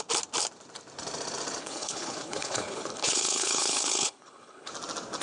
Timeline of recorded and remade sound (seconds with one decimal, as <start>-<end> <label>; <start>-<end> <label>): 0.0-1.6 recorded; 1.6-4.7 remade; 4.7-5.2 recorded